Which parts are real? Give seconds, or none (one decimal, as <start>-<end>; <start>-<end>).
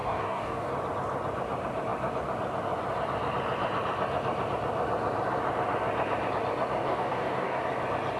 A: 0.7-6.8; 7.6-8.2